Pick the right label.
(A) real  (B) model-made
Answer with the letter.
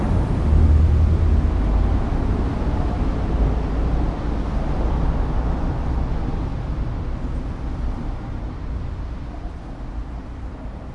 A